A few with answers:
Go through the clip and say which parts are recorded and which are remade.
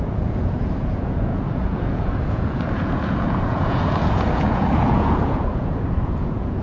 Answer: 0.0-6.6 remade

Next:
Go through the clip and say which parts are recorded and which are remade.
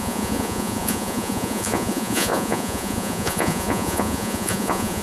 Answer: 0.0-5.0 remade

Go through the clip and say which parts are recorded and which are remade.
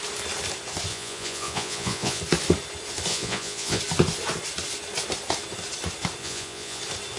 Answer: 0.0-0.9 recorded; 0.9-2.2 remade; 2.2-3.1 recorded; 3.1-3.8 remade; 3.8-6.2 recorded; 6.2-6.8 remade; 6.8-7.2 recorded